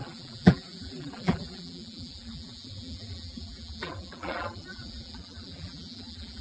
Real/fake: fake